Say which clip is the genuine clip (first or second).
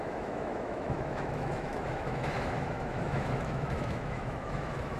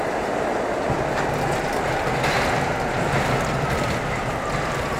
second